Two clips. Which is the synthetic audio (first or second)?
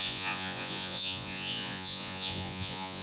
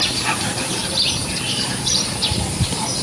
first